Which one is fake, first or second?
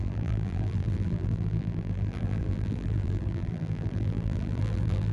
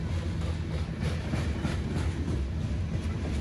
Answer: first